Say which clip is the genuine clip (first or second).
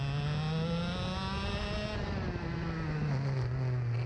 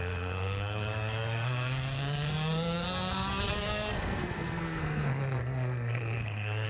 first